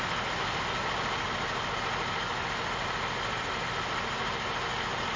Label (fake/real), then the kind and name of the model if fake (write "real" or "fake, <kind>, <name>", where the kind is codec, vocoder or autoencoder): real